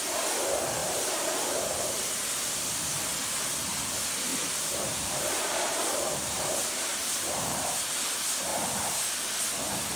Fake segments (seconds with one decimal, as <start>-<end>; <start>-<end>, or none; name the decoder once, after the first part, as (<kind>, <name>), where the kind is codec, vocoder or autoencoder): 0.8-1.4 (vocoder, BigVGAN v2); 4.3-7.8